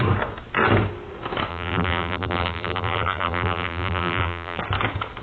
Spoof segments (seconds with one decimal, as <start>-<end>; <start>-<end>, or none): 1.5-4.6